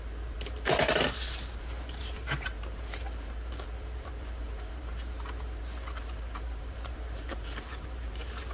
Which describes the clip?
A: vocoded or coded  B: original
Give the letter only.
A